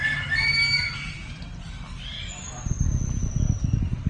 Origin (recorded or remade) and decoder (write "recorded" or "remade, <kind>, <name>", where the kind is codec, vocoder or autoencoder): recorded